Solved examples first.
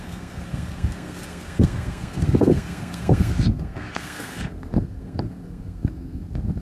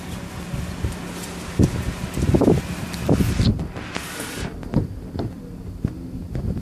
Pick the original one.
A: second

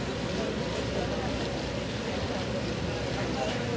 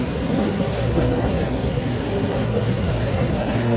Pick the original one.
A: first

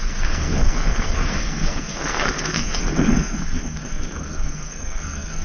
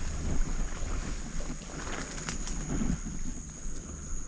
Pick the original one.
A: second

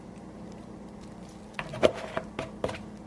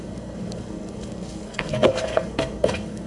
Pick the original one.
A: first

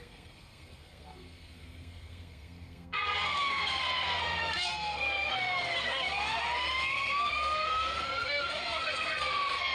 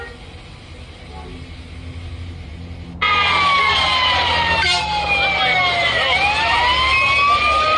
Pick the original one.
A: second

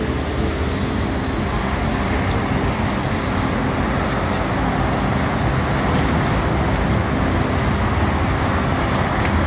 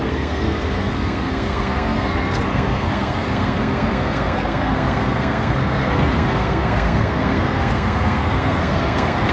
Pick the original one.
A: first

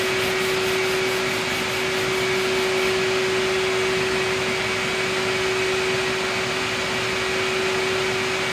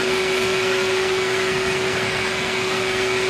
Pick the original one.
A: first